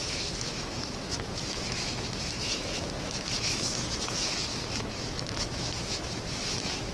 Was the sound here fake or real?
fake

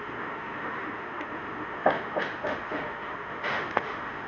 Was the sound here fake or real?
fake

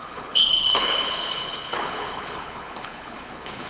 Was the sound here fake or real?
fake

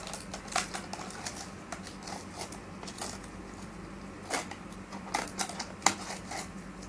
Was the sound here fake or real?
real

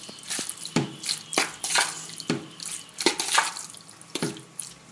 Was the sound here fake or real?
real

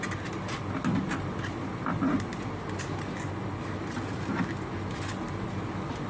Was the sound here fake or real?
real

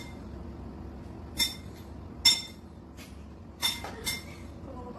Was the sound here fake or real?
real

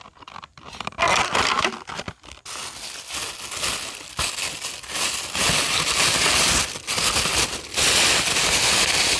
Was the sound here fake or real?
real